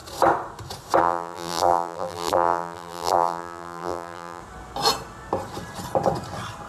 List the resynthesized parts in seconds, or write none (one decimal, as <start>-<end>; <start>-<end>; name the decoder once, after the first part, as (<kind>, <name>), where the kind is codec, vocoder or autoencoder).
1.0-4.4 (vocoder, BigVGAN v2)